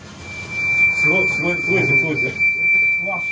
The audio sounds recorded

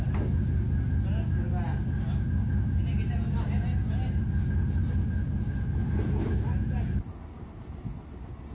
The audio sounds recorded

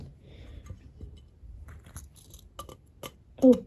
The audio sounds recorded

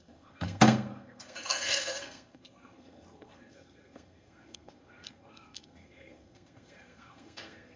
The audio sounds remade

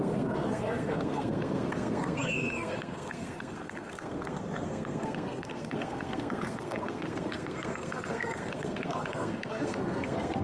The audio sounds remade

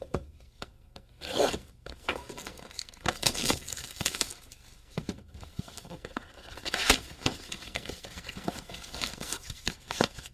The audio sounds remade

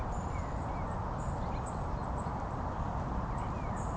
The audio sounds recorded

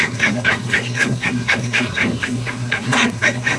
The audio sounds remade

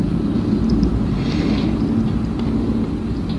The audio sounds recorded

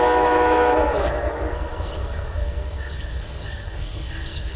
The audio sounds remade